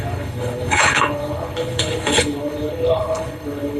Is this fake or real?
fake